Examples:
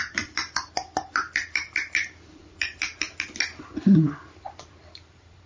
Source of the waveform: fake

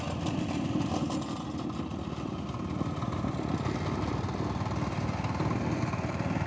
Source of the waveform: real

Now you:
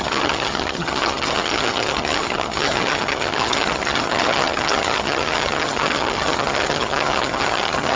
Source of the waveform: fake